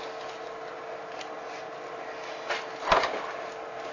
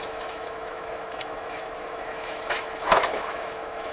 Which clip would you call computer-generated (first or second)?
second